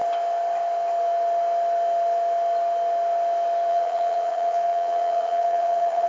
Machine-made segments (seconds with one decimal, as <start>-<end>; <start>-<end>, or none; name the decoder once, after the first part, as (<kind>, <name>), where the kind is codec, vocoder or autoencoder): 3.7-6.1 (vocoder, HiFi-GAN)